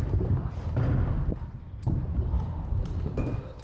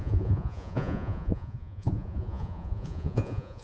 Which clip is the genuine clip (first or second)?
first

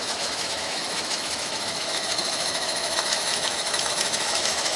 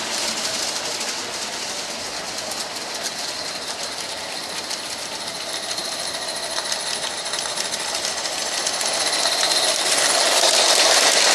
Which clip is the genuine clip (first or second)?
second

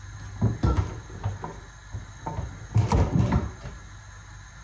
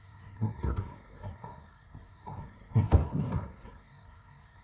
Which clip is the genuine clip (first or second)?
first